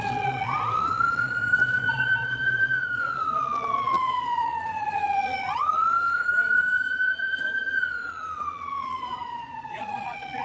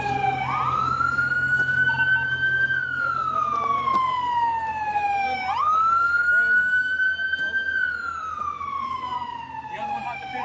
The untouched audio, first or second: second